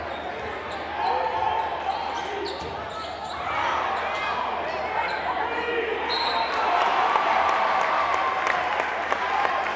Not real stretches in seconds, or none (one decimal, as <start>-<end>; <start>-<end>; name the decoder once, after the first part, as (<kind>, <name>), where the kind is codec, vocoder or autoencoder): 5.9-7.8 (vocoder, BigVGAN v2)